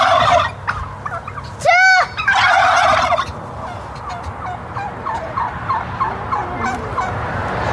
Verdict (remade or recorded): recorded